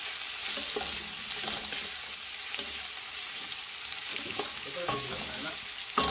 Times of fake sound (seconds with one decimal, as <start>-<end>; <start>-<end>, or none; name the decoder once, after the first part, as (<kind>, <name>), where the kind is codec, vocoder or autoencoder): 4.1-5.5 (autoencoder, DAC-VAE)